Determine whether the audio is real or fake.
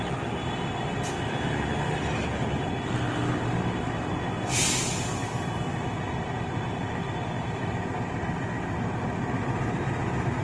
real